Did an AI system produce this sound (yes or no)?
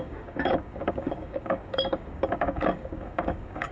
yes